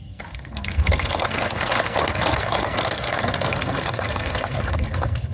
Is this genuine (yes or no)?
no